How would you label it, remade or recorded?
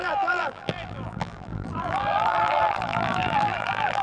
remade